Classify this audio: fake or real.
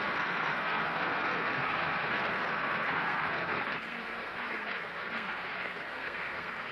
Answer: fake